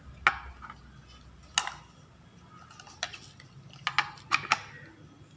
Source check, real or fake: real